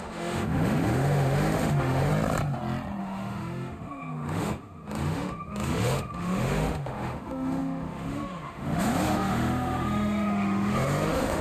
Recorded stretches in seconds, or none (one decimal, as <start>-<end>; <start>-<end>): 2.1-3.0